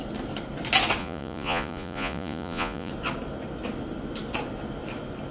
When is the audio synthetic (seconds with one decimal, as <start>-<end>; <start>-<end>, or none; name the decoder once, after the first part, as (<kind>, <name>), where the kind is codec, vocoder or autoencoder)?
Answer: 1.0-2.9 (vocoder, Vocos)